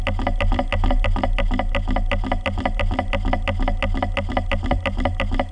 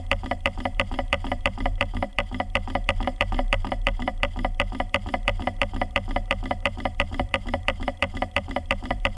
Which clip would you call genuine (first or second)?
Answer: first